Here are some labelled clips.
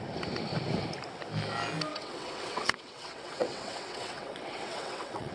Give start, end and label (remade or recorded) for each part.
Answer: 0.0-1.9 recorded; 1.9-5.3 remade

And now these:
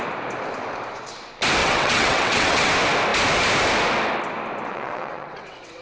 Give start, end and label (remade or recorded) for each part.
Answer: 0.0-1.6 recorded; 1.6-2.7 remade; 2.7-4.7 recorded; 4.7-5.8 remade